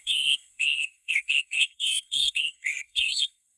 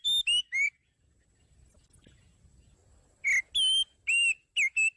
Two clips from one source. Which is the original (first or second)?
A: second